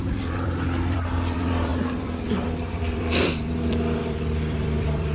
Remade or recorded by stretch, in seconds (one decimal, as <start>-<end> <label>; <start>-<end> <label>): 0.0-5.1 remade